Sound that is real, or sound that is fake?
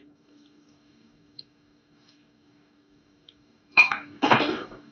fake